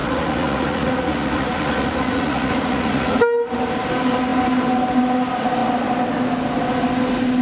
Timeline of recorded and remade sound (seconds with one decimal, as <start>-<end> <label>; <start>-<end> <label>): 0.0-3.2 remade; 3.2-7.4 recorded